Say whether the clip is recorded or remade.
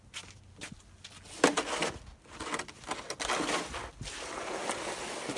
recorded